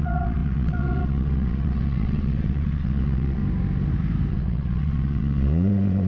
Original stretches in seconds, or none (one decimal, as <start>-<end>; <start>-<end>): 3.4-4.3